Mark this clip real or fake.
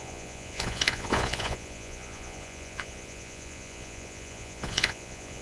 fake